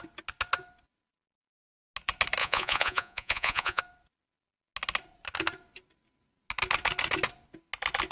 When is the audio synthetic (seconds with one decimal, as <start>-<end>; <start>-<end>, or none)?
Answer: 2.4-3.8